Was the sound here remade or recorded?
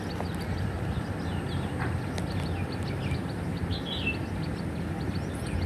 recorded